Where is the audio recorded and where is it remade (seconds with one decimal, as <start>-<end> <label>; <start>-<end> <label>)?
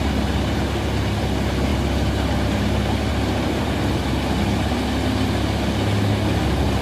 0.0-6.8 recorded